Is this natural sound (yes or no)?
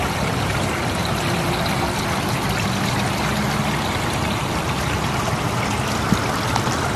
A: yes